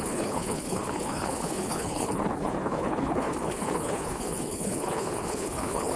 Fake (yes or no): yes